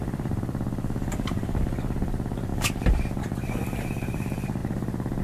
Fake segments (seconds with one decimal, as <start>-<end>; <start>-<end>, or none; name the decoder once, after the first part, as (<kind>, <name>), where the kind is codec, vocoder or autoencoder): 0.0-4.6 (vocoder, BigVGAN v2)